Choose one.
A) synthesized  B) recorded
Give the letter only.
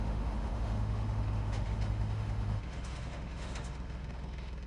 A